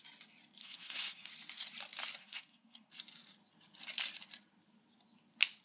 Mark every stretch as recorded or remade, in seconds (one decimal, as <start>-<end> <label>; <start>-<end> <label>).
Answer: 0.0-0.6 recorded; 0.6-1.3 remade; 1.3-2.2 recorded; 2.2-2.9 remade; 2.9-5.6 recorded